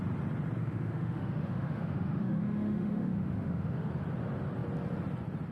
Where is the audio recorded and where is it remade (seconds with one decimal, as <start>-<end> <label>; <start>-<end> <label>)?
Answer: 0.0-0.6 recorded; 0.6-3.9 remade; 3.9-5.5 recorded